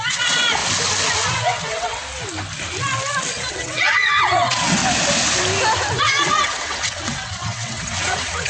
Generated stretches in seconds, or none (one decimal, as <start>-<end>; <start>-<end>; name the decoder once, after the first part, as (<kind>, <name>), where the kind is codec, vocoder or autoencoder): 0.0-0.6 (vocoder, WaveNeXt); 1.4-2.0; 3.5-4.8; 6.0-8.5